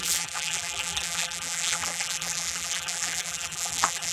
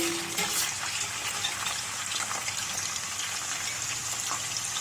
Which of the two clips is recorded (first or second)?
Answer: second